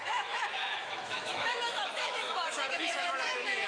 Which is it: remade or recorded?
remade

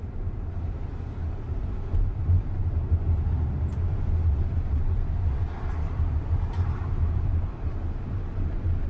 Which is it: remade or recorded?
remade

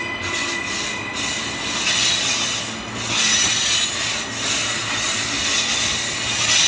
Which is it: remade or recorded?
recorded